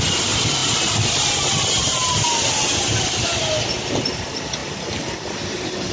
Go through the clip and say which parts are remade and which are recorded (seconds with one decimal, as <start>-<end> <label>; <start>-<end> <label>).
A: 0.0-5.9 recorded